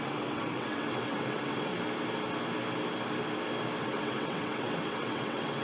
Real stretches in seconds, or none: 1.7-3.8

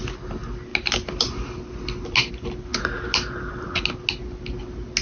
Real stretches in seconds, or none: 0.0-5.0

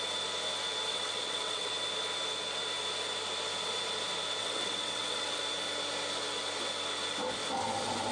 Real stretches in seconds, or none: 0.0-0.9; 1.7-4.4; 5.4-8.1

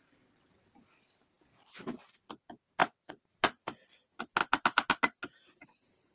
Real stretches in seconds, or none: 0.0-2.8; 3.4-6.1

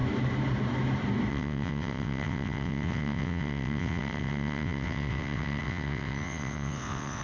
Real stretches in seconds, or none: 0.0-1.3

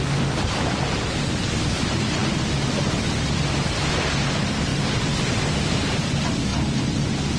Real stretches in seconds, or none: 0.0-7.4

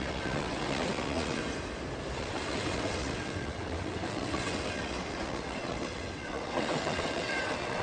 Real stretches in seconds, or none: 1.4-2.2

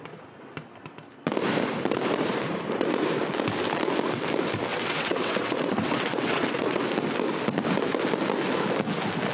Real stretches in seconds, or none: 0.0-4.7; 6.8-9.3